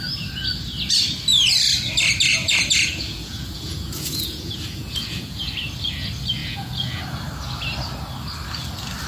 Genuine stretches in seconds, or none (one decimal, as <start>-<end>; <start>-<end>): 0.0-2.3; 5.5-6.4; 7.0-9.1